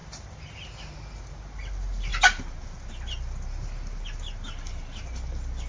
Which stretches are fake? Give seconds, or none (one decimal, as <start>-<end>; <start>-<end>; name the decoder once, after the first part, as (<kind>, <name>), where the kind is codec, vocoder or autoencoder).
none